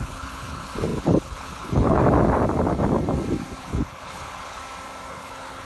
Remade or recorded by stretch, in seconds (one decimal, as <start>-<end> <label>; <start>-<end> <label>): 0.0-2.0 remade; 2.0-3.6 recorded; 3.6-4.6 remade; 4.6-5.1 recorded; 5.1-5.6 remade